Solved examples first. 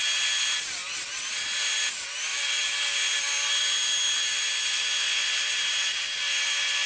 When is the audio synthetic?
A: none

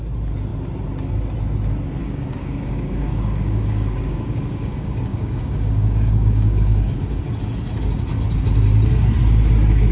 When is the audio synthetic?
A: 2.0-7.2 (codec, DAC)

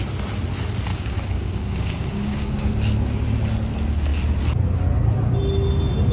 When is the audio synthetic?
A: 0.9-2.7 (codec, DAC)

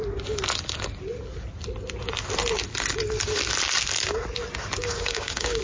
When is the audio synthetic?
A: 4.8-5.6 (codec, DAC)

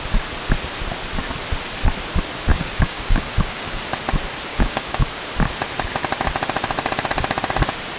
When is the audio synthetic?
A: 2.5-3.8 (codec, DAC); 4.5-5.2

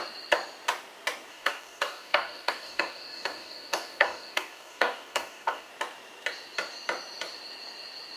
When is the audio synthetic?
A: 1.3-5.7 (codec, DAC)

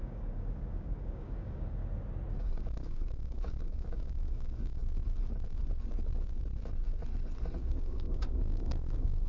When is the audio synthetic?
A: 0.0-1.8 (codec, DAC); 2.4-4.8; 7.6-9.3